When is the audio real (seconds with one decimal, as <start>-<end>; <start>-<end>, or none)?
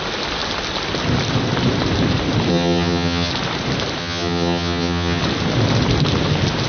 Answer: 0.0-2.5; 3.3-4.0; 5.2-6.7